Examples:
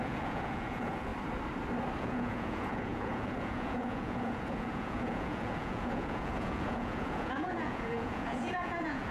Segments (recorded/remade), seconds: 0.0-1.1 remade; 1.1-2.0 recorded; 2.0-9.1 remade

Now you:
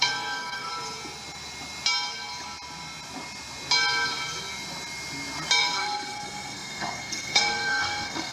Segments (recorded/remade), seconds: 0.0-0.7 remade; 0.7-5.6 recorded; 5.6-8.3 remade

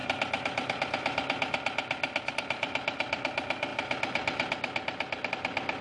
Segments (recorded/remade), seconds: 0.0-3.7 recorded; 3.7-5.3 remade; 5.3-5.8 recorded

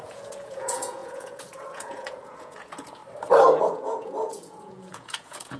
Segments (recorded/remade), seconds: 0.0-3.0 remade; 3.0-3.6 recorded; 3.6-5.6 remade